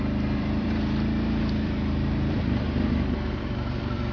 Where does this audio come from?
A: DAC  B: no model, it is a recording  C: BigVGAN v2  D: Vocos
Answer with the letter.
C